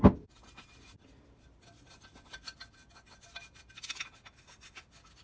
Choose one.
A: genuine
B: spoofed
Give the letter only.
A